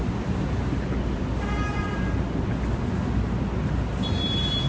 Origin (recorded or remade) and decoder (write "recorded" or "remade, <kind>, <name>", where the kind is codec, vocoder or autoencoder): recorded